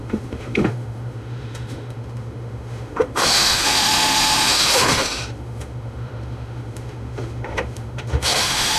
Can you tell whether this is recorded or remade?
remade